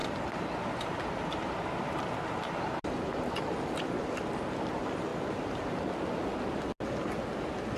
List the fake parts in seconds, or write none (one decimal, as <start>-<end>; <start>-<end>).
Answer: 0.0-2.8